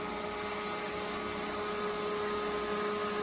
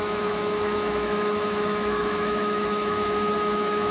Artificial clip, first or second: second